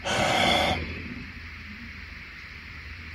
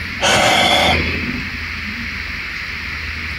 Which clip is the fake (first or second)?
first